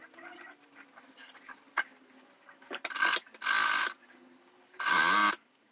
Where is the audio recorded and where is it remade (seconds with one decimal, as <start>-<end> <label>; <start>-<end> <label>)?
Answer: 0.0-1.9 remade; 1.9-5.3 recorded; 5.3-5.7 remade